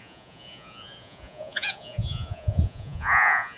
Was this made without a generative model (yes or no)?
no